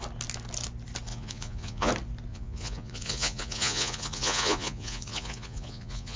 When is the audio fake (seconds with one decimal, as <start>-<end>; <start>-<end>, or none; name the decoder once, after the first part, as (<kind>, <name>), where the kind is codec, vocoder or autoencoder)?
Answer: 1.1-1.9 (vocoder, Vocos); 2.3-6.2